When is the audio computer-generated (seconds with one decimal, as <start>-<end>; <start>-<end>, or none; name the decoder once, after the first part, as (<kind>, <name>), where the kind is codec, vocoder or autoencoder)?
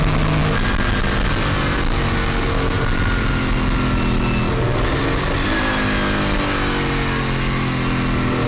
none